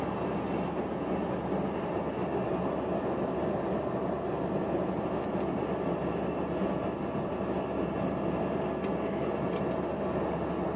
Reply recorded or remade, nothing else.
recorded